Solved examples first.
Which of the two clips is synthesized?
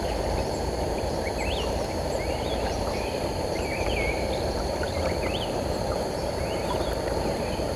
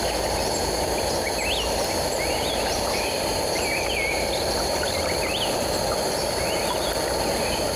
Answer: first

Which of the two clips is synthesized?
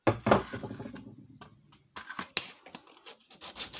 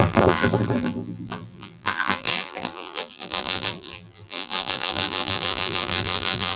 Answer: second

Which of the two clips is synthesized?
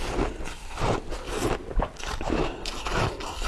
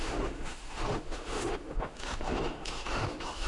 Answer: second